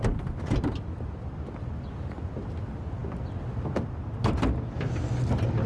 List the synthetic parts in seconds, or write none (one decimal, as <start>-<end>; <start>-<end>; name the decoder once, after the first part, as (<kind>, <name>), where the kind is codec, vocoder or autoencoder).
none